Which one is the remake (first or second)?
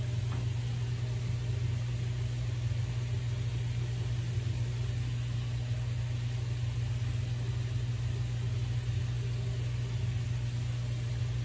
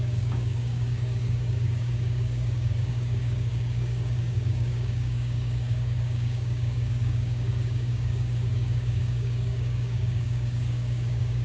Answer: second